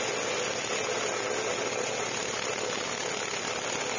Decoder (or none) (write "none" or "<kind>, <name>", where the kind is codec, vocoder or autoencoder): none